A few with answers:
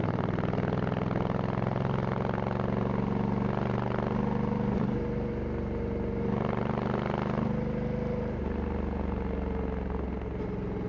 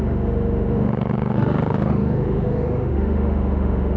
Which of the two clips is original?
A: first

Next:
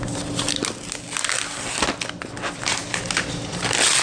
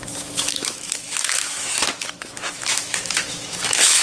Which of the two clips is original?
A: first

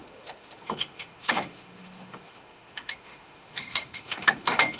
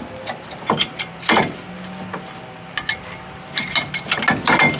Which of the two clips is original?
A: second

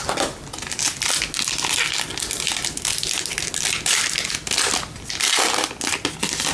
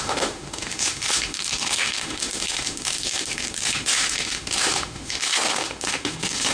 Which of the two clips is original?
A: first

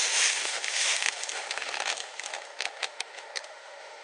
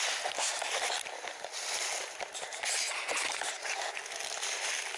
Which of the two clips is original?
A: second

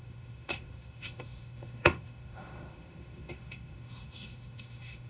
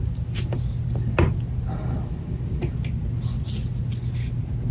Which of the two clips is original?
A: second